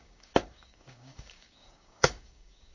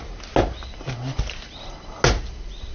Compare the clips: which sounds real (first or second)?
second